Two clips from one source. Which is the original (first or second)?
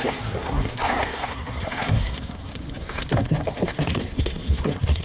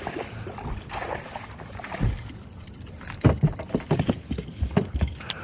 second